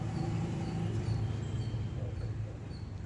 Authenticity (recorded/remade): recorded